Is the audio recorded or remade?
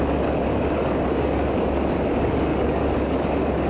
remade